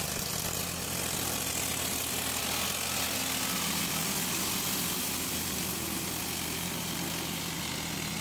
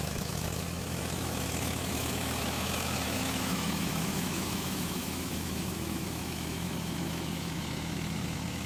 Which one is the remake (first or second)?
second